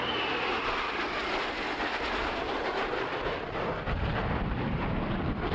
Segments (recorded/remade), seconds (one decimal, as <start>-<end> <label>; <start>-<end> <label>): 0.0-5.5 recorded